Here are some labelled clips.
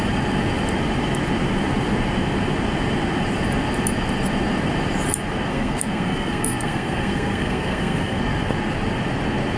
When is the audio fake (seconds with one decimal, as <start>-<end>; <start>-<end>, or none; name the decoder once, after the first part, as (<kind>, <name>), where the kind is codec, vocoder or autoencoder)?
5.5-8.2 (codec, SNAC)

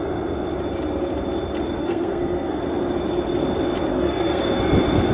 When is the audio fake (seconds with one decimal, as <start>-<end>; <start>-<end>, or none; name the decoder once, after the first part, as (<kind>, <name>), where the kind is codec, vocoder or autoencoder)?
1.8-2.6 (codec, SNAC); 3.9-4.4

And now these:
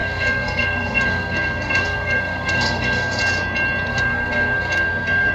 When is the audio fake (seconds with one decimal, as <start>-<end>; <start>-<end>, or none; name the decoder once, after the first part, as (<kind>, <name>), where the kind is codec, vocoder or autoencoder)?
0.0-3.2 (codec, SNAC); 3.9-5.3

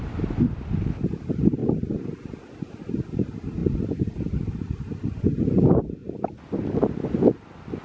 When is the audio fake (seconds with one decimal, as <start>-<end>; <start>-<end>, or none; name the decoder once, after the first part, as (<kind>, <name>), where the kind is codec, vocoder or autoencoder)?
none

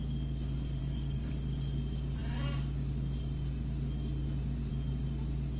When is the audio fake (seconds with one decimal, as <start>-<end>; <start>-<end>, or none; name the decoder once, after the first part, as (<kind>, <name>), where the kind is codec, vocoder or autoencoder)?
0.8-1.3 (codec, SNAC)

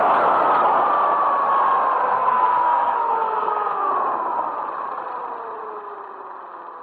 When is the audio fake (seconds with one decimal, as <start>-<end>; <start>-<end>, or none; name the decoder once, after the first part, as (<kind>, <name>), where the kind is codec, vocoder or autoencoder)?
2.1-3.9 (codec, SNAC)